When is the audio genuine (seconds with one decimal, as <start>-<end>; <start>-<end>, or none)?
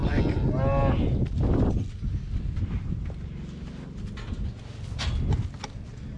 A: 0.0-6.2